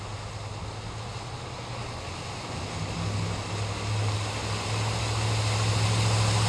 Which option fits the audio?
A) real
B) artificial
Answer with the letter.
A